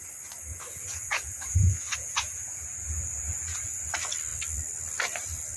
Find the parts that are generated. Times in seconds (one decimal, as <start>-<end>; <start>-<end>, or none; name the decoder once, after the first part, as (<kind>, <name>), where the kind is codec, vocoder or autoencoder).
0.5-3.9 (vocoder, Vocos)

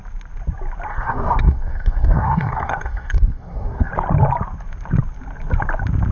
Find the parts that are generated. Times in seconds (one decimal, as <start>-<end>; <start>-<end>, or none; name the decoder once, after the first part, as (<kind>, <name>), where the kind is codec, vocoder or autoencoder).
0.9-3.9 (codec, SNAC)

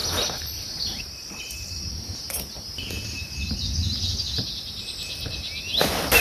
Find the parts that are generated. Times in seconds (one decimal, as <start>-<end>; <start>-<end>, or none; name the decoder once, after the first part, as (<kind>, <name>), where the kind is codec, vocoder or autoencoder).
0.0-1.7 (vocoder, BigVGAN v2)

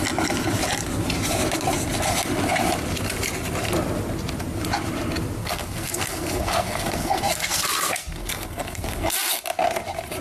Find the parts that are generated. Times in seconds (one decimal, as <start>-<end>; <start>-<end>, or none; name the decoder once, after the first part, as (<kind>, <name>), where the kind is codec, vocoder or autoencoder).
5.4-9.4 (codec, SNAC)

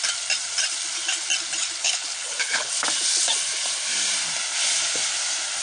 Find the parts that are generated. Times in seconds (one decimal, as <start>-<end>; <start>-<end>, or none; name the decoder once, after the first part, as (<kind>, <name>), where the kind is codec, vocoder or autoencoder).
1.8-2.7 (codec, HILCodec)